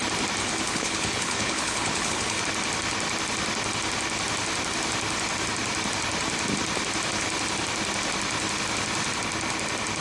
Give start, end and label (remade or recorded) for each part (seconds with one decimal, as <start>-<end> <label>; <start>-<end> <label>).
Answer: 0.0-0.4 recorded; 0.4-2.4 remade; 2.4-10.0 recorded

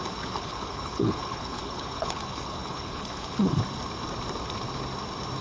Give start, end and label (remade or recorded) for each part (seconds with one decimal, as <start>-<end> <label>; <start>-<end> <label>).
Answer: 0.0-0.4 recorded; 0.4-3.6 remade; 3.6-5.4 recorded

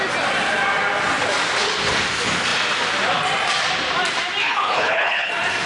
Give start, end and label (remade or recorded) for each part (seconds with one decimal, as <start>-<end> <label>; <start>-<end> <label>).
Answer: 0.0-4.4 recorded; 4.4-5.3 remade; 5.3-5.7 recorded

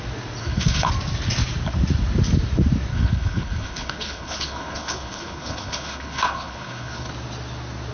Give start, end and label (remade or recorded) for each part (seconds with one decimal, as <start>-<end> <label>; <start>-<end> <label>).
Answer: 0.0-0.4 recorded; 0.4-0.9 remade; 0.9-2.9 recorded; 2.9-7.1 remade; 7.1-7.9 recorded

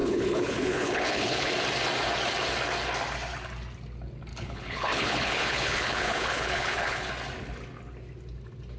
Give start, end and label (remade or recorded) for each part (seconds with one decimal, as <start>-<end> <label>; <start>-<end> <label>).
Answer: 0.0-1.5 remade; 1.5-4.3 recorded; 4.3-7.1 remade; 7.1-8.8 recorded

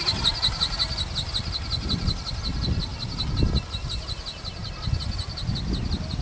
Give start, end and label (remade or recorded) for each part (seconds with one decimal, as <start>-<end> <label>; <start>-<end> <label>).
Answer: 0.0-6.2 recorded

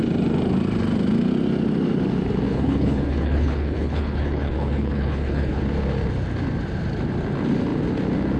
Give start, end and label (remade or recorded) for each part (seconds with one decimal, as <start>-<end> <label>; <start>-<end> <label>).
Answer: 0.0-2.5 recorded; 2.5-5.6 remade; 5.6-8.4 recorded

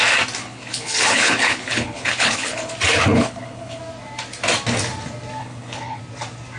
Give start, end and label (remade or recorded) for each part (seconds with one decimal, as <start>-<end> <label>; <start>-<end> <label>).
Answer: 0.0-0.4 recorded; 0.4-2.7 remade; 2.7-3.1 recorded; 3.1-3.8 remade; 3.8-5.4 recorded; 5.4-6.0 remade; 6.0-6.6 recorded